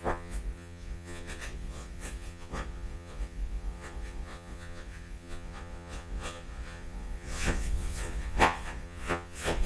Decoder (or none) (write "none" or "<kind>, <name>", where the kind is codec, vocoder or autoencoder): vocoder, Vocos